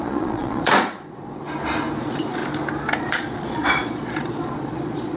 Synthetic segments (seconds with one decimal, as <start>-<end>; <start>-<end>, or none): 0.0-1.4; 2.0-2.4; 3.0-5.2